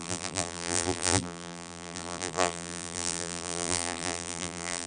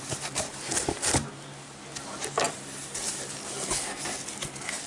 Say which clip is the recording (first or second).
second